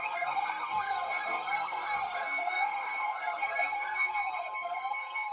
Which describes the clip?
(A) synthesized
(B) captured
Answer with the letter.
A